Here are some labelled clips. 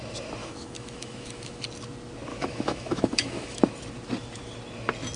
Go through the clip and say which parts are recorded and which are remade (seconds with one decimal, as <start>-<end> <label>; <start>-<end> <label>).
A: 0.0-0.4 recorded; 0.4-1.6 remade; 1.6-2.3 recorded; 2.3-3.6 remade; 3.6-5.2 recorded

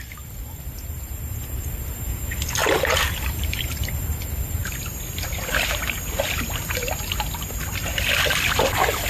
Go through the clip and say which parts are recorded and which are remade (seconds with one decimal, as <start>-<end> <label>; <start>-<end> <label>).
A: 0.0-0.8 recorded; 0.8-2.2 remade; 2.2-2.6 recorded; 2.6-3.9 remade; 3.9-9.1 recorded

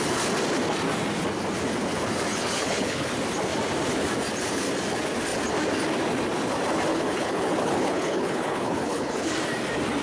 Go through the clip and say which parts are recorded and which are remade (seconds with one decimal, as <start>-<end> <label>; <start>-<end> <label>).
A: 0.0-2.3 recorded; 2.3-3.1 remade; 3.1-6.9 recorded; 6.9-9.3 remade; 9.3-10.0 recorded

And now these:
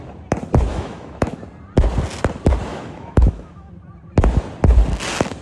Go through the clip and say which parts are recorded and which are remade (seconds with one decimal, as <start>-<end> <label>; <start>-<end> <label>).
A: 0.0-0.7 recorded; 0.7-1.4 remade; 1.4-2.7 recorded; 2.7-3.7 remade; 3.7-5.4 recorded

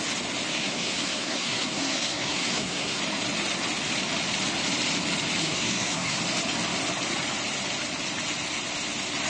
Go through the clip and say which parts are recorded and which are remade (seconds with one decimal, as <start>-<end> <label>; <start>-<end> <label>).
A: 0.0-0.5 recorded; 0.5-3.0 remade; 3.0-5.4 recorded; 5.4-6.2 remade; 6.2-9.3 recorded

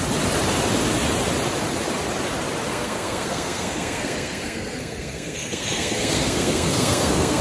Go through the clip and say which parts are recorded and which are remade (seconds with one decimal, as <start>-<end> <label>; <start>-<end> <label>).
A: 0.0-2.7 recorded; 2.7-7.4 remade

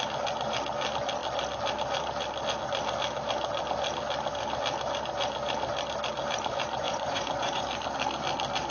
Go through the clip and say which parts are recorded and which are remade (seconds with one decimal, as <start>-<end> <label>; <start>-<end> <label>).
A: 0.0-6.8 recorded; 6.8-7.6 remade; 7.6-8.7 recorded

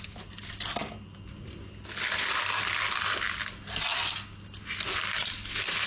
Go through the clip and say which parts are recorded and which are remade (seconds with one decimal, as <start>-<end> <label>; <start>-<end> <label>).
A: 0.0-5.9 recorded